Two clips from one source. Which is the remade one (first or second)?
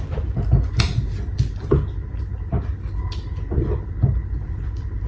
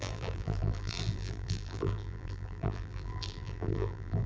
second